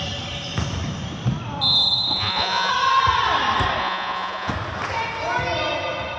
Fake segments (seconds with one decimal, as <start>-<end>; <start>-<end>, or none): 2.1-2.7; 3.8-4.5